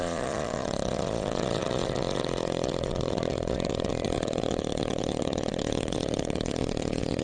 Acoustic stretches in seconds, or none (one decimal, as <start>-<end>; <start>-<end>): none